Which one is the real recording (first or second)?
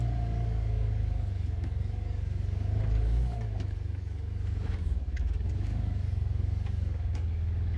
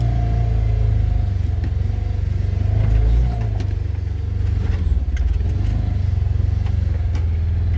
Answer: second